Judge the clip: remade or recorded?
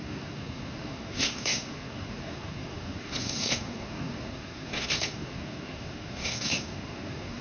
remade